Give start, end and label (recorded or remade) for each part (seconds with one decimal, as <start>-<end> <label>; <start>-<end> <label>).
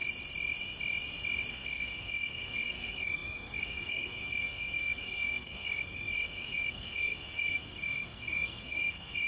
0.0-1.5 recorded; 1.5-9.3 remade